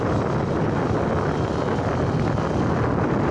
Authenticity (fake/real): real